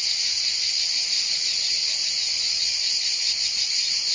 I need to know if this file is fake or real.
fake